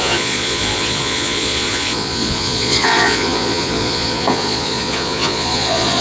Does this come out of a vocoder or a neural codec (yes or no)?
yes